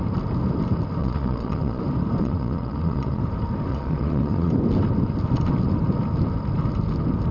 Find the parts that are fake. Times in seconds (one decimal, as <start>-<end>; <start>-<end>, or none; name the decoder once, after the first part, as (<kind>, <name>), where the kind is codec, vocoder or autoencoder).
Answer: 1.0-1.8 (vocoder, Vocos); 2.2-3.2; 3.7-4.5